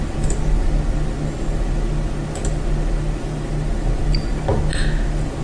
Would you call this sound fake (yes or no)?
no